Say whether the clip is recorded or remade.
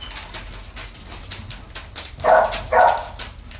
recorded